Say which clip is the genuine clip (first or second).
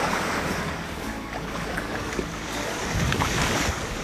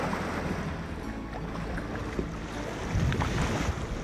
second